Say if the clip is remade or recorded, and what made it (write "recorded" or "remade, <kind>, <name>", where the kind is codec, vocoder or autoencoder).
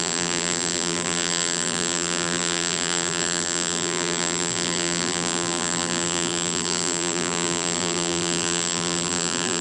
remade, vocoder, BigVGAN v2